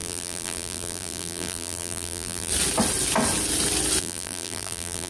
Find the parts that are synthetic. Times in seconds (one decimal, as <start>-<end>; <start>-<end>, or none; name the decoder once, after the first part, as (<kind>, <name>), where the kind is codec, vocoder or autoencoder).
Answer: 0.0-2.5 (vocoder, BigVGAN v2); 4.0-5.1